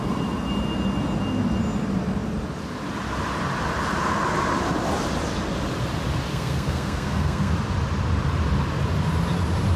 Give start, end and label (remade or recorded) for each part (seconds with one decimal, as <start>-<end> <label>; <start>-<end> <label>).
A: 0.0-6.3 recorded; 6.3-7.5 remade; 7.5-9.8 recorded